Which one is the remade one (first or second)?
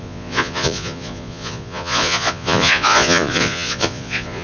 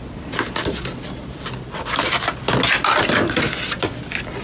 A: first